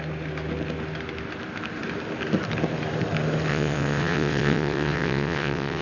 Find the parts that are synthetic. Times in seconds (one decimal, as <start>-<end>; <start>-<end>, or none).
3.5-5.8